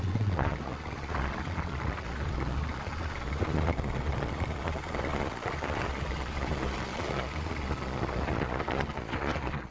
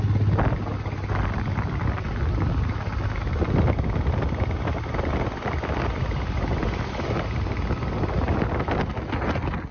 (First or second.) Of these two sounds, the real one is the second